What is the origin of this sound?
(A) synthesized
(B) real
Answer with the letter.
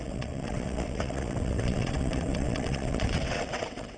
A